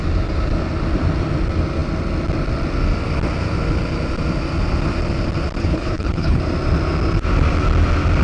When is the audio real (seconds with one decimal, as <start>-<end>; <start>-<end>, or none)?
0.0-5.6; 6.4-8.2